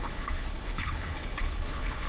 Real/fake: fake